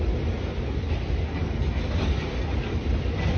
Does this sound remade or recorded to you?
recorded